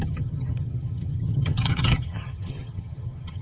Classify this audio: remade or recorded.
remade